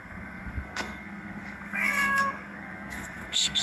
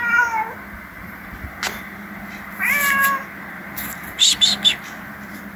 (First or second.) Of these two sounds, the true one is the second